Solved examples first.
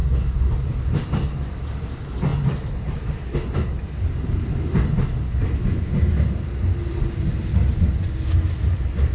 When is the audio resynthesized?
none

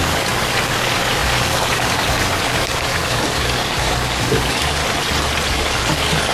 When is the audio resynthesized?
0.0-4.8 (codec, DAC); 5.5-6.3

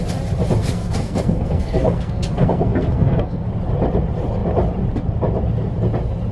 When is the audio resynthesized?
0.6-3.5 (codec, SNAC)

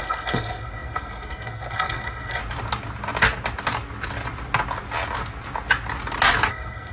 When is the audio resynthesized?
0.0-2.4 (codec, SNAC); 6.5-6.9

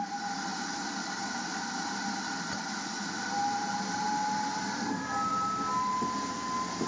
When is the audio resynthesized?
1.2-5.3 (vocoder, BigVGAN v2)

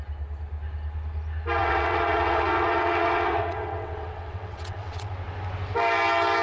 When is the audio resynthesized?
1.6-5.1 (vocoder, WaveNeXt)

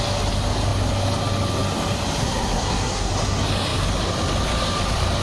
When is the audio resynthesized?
2.2-3.1 (codec, SNAC)